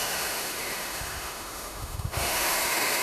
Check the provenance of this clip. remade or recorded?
remade